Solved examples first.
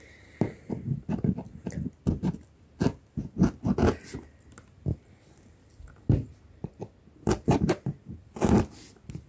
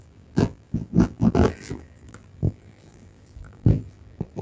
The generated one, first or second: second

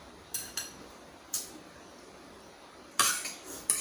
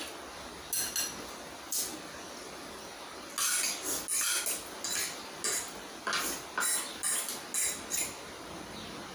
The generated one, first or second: first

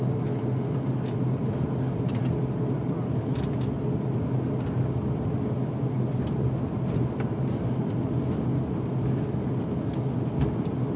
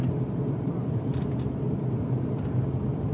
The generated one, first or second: second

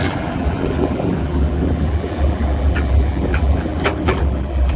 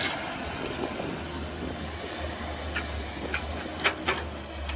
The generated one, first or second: first